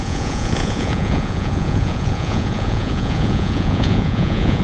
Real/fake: fake